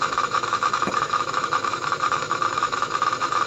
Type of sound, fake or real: fake